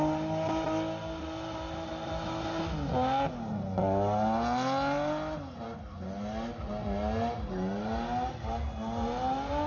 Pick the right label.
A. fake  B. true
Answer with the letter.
B